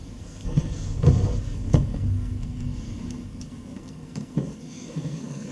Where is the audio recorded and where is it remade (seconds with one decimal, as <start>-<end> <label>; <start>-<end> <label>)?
0.0-5.5 remade